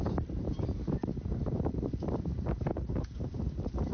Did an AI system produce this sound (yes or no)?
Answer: yes